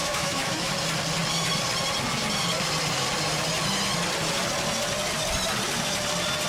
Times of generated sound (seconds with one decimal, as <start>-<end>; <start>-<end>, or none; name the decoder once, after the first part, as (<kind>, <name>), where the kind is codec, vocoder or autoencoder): 0.0-0.7 (autoencoder, DAC-VAE)